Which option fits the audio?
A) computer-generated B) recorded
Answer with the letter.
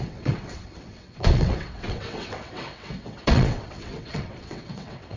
A